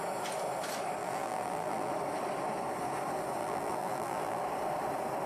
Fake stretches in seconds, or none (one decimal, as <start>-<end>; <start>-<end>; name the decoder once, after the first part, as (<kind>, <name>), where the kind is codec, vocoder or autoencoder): 1.0-1.9 (vocoder, BigVGAN v2); 3.4-4.4